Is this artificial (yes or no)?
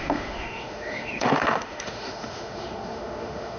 yes